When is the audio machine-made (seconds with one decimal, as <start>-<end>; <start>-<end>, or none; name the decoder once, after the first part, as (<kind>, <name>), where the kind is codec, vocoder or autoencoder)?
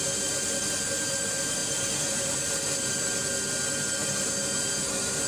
none